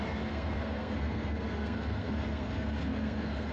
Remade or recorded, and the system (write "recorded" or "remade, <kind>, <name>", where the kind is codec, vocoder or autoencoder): remade, codec, SNAC